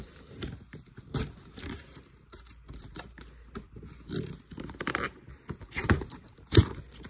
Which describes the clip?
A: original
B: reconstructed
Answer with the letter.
B